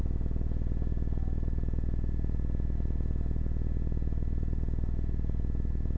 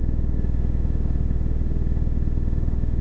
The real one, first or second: first